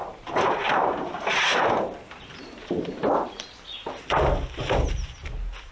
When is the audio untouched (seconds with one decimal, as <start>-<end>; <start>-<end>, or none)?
3.0-4.6